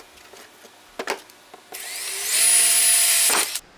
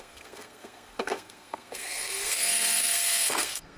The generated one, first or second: second